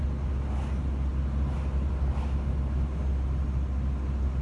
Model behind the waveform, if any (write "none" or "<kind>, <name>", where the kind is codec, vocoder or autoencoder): none